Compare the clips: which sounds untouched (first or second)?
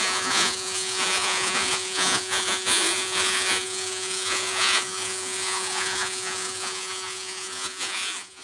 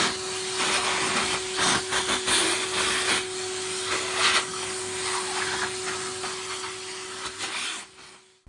second